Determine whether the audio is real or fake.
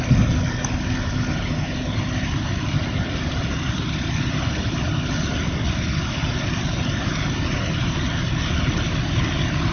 real